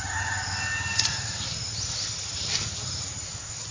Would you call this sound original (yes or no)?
yes